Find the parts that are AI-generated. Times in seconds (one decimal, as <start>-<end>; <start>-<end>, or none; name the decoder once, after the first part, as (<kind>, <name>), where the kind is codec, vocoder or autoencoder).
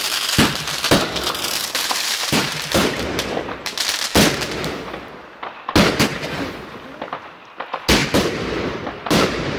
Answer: 1.6-3.7 (vocoder, BigVGAN v2); 8.0-9.6